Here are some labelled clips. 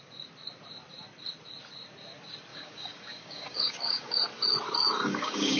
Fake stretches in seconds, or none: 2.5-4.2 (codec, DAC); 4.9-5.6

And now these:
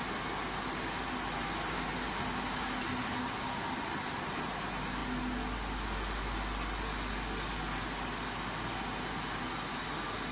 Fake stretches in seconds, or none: none

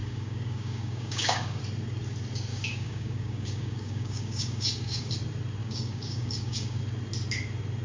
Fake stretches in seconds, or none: 0.0-1.6 (codec, DAC); 2.5-5.1; 5.6-6.8

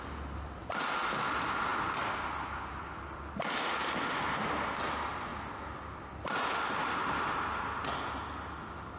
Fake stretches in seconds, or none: none

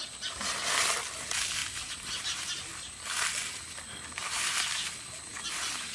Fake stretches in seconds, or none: none